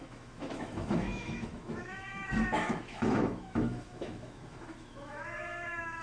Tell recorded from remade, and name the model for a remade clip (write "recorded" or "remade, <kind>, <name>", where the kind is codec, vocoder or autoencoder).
remade, autoencoder, DAC-VAE